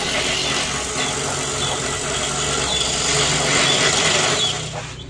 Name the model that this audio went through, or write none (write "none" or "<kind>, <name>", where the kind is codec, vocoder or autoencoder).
none